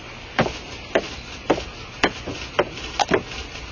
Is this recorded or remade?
recorded